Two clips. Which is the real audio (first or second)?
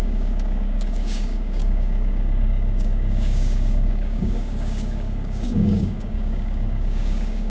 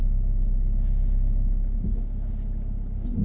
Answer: second